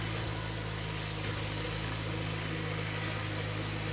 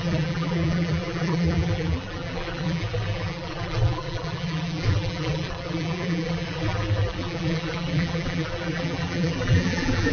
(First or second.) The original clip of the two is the first